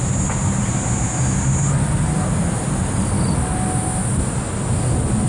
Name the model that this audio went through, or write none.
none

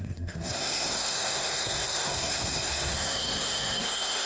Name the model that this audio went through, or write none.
codec, SNAC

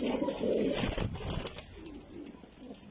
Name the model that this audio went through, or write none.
none